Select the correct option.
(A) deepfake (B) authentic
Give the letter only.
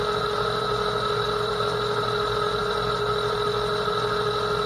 B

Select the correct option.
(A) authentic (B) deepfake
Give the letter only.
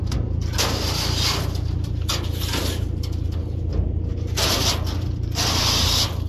A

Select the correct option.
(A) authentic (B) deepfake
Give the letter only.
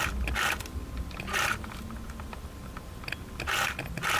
A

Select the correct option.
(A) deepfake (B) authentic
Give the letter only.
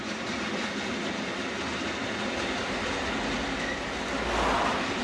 B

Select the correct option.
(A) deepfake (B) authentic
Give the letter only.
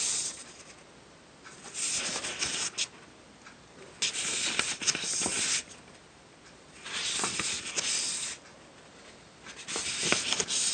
B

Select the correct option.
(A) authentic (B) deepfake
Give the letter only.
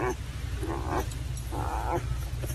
A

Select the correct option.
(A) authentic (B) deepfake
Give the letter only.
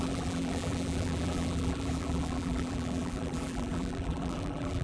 B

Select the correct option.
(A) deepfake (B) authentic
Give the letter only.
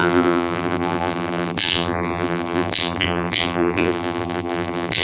A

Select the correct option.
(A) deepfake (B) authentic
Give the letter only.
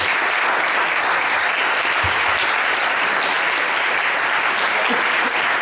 B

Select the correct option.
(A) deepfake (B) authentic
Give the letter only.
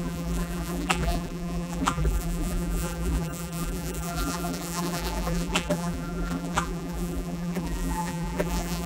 A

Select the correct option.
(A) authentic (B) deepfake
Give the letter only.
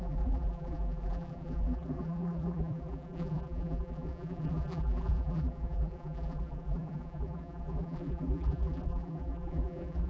B